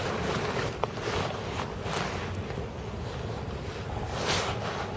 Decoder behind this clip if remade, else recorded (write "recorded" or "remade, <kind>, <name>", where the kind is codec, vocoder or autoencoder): recorded